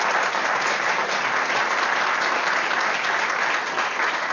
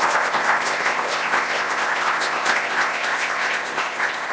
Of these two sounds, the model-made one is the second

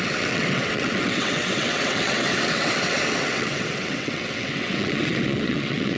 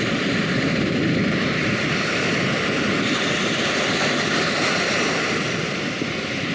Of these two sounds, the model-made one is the first